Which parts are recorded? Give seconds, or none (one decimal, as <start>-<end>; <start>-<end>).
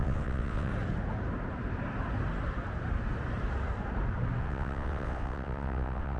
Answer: 0.7-4.4